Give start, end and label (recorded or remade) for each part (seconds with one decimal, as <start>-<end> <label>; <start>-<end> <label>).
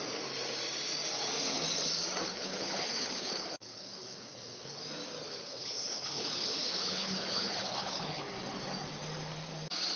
0.0-2.2 recorded; 2.2-4.8 remade; 4.8-5.4 recorded; 5.4-8.2 remade; 8.2-10.0 recorded